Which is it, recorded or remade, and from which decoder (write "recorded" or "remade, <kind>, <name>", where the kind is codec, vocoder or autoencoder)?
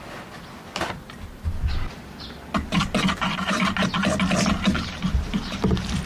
recorded